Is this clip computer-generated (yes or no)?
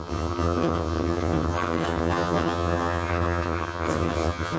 yes